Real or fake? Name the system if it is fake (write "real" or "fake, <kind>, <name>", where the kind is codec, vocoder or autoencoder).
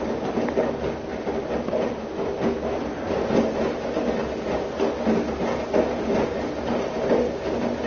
real